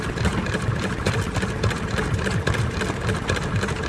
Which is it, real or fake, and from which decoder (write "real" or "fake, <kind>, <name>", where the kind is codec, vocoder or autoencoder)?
real